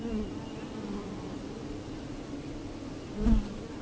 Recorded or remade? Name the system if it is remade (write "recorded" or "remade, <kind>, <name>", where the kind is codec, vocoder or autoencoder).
recorded